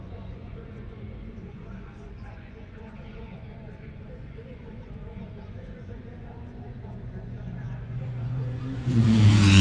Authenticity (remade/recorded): remade